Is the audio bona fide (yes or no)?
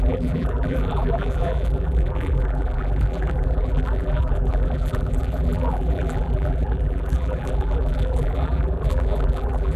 no